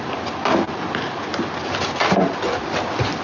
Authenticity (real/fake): real